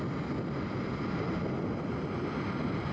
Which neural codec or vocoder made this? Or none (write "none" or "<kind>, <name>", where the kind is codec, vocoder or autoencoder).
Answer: none